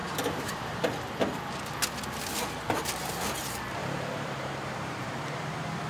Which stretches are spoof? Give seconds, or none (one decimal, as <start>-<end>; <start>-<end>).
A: 0.0-0.6; 3.8-5.9